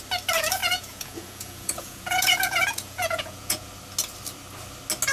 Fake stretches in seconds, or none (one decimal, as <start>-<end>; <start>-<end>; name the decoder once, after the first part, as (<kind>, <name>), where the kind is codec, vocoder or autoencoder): 0.6-3.7 (vocoder, Vocos)